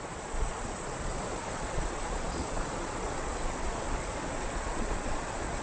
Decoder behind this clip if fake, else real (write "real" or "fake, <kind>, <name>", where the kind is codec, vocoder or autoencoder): fake, vocoder, Vocos